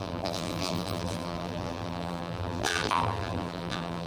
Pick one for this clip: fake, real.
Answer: fake